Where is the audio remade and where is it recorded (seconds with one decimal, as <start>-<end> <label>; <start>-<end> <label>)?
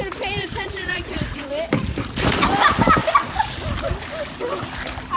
0.0-0.4 recorded; 0.4-1.5 remade; 1.5-5.2 recorded